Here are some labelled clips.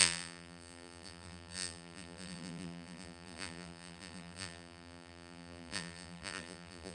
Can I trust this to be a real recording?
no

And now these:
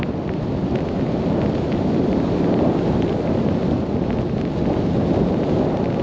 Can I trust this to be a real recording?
yes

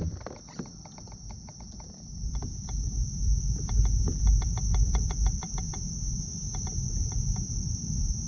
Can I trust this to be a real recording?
no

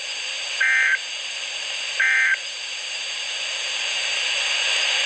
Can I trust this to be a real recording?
no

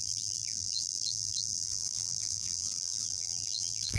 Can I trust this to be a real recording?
no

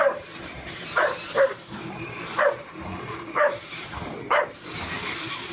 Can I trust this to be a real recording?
no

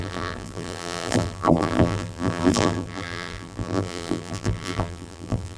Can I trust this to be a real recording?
no